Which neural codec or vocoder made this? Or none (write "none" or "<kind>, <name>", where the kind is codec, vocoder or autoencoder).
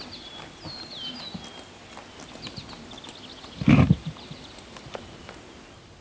none